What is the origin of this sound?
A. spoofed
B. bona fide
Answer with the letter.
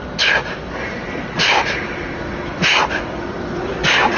B